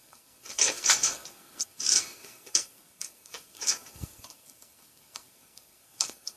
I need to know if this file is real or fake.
fake